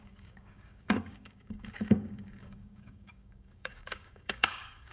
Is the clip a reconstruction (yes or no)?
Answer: yes